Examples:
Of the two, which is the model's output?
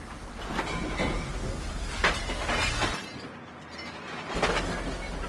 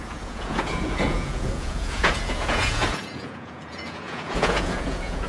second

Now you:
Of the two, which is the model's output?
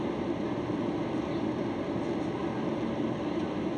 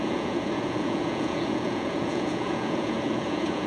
second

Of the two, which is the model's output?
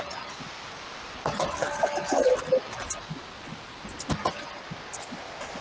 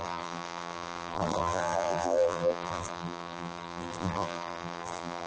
second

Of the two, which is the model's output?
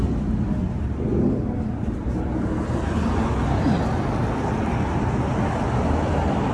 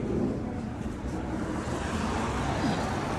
second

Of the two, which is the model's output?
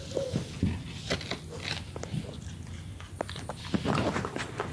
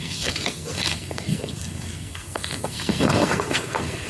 second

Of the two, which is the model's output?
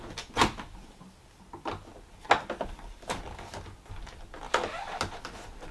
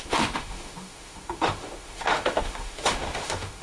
second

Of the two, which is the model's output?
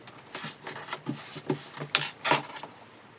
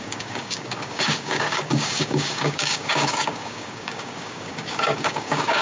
second